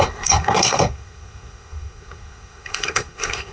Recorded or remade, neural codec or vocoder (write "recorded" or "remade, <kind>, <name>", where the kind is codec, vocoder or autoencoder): remade, codec, SNAC